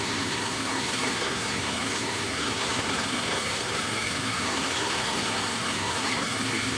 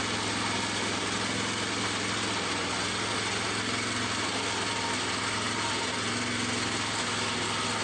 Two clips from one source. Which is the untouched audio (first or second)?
second